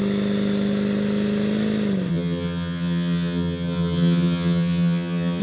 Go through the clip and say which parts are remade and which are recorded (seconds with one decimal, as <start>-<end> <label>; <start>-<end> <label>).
0.0-2.1 recorded; 2.1-5.4 remade